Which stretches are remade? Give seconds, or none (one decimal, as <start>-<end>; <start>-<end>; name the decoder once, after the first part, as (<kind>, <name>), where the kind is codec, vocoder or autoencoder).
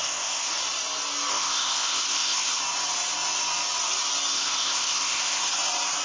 0.0-0.5 (codec, ZipCodec); 1.3-2.6; 4.3-5.4